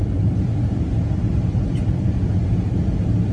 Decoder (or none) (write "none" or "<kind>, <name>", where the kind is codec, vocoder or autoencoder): none